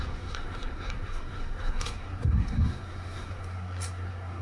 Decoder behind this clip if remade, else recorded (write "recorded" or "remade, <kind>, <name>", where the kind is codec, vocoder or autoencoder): remade, codec, SNAC